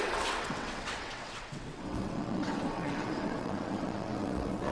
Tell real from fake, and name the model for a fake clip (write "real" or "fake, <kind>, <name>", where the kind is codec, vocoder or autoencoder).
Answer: fake, vocoder, WaveNeXt